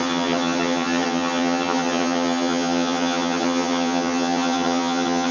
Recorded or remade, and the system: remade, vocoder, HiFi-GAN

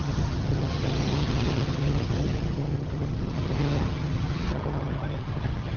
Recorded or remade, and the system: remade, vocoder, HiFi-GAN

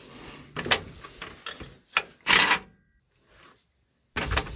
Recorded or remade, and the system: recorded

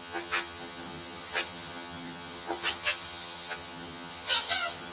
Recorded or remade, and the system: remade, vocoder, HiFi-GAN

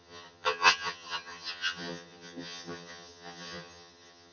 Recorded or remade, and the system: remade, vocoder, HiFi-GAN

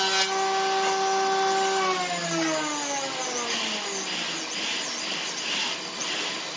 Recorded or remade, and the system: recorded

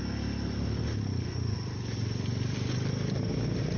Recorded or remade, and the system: recorded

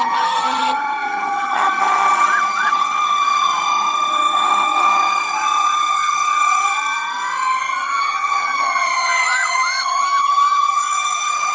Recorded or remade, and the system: remade, vocoder, HiFi-GAN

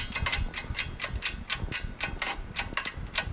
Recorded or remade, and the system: recorded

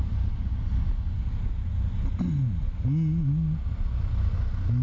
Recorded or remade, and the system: recorded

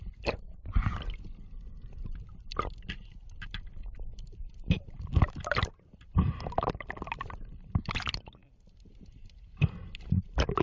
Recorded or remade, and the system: recorded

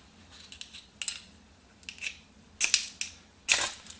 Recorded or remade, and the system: recorded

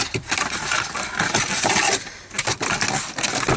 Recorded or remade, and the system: recorded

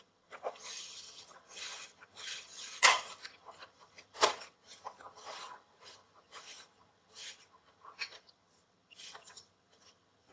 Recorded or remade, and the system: remade, vocoder, HiFi-GAN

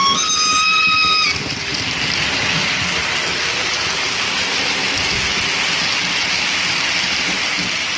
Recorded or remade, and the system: recorded